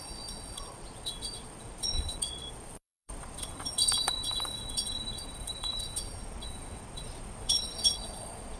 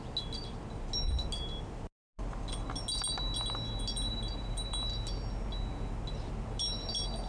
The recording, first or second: second